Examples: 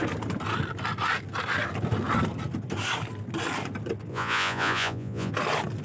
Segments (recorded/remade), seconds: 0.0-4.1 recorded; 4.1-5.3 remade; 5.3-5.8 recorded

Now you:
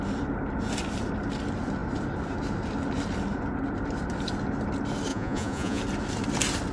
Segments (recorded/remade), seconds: 0.0-5.1 recorded; 5.1-5.8 remade; 5.8-6.7 recorded

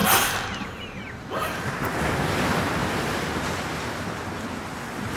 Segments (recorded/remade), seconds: 0.0-5.2 recorded

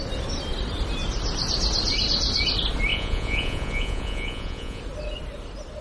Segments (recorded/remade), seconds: 0.0-2.9 recorded; 2.9-4.8 remade; 4.8-5.8 recorded

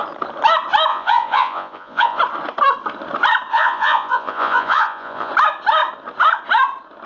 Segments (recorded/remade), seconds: 0.0-0.9 recorded; 0.9-2.2 remade; 2.2-3.5 recorded; 3.5-5.3 remade; 5.3-7.1 recorded

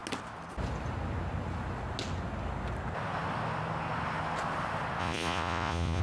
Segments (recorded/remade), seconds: 0.0-5.0 recorded; 5.0-6.0 remade

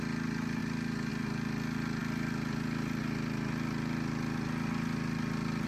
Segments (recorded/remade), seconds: 0.0-5.7 recorded